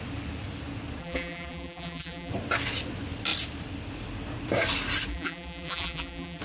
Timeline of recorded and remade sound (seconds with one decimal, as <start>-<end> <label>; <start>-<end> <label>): 0.0-1.0 recorded; 1.0-2.3 remade; 2.3-5.1 recorded; 5.1-6.4 remade